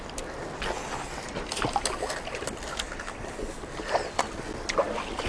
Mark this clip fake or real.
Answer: real